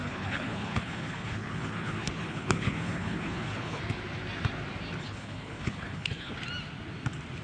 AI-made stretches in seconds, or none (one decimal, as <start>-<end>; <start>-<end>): 0.0-3.8; 5.0-6.3